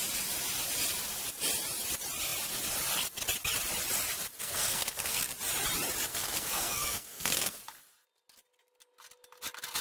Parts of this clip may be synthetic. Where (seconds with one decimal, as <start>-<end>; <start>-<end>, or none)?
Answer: 4.4-5.2; 6.1-7.6